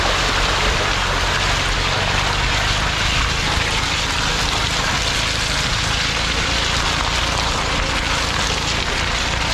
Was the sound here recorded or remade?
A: recorded